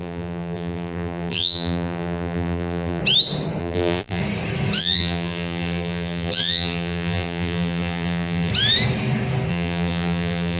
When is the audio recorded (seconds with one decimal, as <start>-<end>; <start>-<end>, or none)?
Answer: 3.0-3.6; 4.2-4.8; 8.5-9.5